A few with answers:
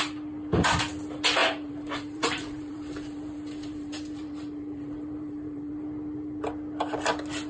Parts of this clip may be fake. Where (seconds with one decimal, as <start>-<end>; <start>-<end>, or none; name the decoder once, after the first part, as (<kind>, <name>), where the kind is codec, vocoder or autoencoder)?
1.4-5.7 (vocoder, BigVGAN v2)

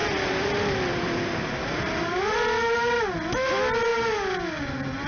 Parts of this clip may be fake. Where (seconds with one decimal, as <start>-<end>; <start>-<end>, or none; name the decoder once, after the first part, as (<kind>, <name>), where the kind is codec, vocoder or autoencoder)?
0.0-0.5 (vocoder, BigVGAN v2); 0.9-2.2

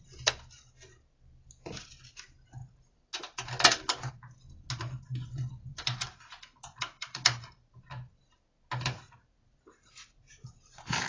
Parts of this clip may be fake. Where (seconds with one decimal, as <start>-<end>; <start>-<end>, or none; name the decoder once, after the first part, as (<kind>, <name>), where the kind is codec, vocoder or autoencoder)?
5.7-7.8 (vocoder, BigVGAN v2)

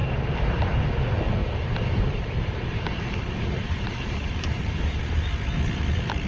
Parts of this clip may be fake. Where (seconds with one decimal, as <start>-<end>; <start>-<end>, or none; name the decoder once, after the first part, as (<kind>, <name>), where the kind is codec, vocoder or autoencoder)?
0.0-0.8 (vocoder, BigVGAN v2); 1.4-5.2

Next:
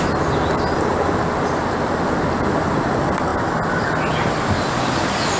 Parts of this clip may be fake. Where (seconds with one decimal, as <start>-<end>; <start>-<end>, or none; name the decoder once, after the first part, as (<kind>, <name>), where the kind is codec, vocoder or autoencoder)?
none

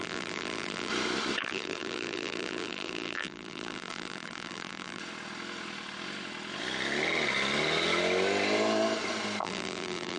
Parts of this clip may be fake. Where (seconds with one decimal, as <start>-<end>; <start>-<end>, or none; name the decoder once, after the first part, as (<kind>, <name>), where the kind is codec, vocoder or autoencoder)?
0.0-0.9 (vocoder, BigVGAN v2); 1.4-5.0; 9.4-10.2